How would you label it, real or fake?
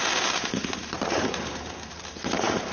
fake